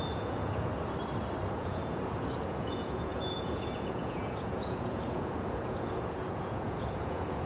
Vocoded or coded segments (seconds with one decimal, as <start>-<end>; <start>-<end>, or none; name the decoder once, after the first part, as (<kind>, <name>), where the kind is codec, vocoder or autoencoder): 0.0-0.7 (vocoder, Vocos); 1.5-7.5